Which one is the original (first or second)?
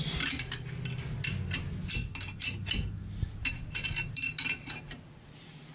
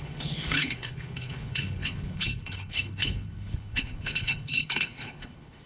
first